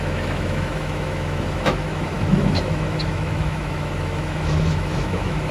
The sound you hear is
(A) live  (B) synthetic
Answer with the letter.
B